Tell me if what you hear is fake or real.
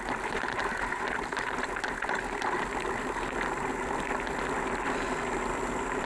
real